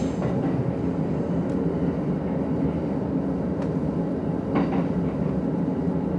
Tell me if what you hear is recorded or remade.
recorded